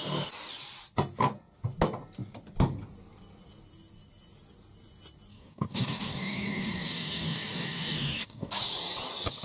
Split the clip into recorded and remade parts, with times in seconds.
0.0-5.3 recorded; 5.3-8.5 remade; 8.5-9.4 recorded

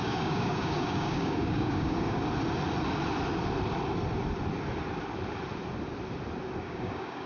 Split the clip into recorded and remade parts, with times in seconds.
0.0-2.2 remade; 2.2-6.6 recorded; 6.6-7.3 remade

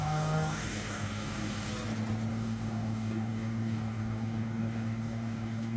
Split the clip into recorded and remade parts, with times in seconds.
0.0-1.7 remade; 1.7-2.3 recorded; 2.3-5.8 remade

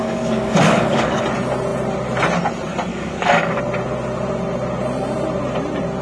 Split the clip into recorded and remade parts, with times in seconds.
0.0-1.2 remade; 1.2-2.9 recorded; 2.9-3.6 remade; 3.6-6.0 recorded

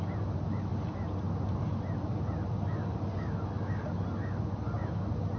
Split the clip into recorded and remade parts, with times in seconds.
0.0-5.4 recorded

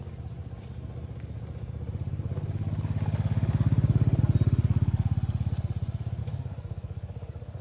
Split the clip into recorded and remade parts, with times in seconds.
0.0-6.2 recorded; 6.2-7.6 remade

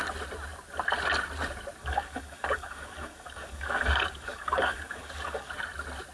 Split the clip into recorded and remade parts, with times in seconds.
0.0-1.8 recorded; 1.8-5.5 remade; 5.5-6.1 recorded

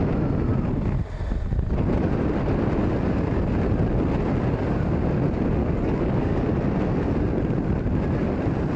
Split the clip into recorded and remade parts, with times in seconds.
0.0-5.6 recorded; 5.6-6.4 remade; 6.4-8.8 recorded